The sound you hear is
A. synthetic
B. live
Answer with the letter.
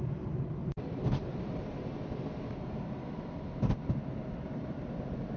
B